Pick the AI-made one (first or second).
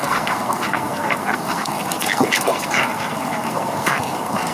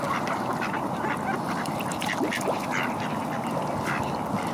first